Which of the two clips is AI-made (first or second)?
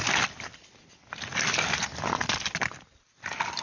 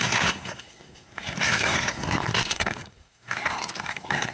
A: second